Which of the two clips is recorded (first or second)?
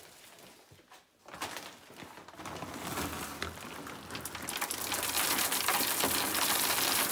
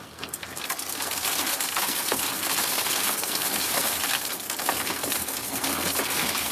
first